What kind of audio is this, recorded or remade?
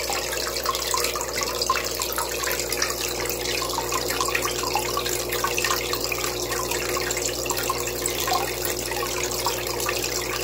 recorded